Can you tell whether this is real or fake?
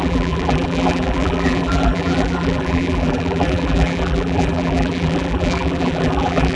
fake